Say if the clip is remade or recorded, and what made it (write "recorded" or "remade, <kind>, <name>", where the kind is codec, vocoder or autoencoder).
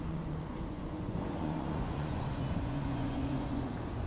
remade, vocoder, Vocos